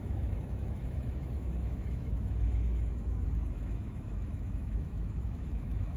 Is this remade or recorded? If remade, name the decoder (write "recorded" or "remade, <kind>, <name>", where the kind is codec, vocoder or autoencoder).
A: remade, autoencoder, DAC-VAE